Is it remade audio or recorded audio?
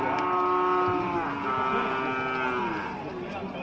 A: recorded